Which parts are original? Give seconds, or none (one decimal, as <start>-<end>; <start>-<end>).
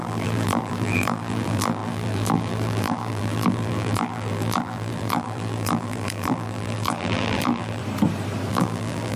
7.8-8.5